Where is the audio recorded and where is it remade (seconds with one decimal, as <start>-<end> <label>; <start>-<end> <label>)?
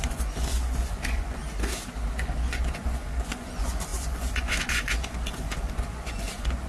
0.0-1.4 remade; 1.4-2.1 recorded; 2.1-6.7 remade